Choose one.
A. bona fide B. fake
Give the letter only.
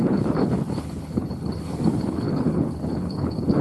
B